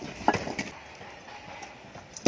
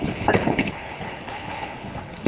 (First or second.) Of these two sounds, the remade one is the second